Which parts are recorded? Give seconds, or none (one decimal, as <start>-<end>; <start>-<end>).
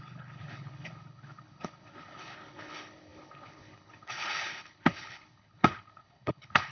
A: none